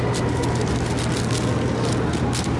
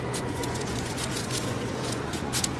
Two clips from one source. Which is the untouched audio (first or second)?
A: first